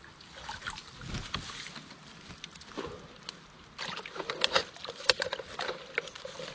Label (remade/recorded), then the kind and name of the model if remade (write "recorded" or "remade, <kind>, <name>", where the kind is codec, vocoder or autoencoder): recorded